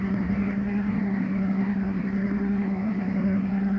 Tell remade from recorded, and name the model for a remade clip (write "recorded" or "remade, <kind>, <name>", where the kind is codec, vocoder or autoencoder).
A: remade, codec, SNAC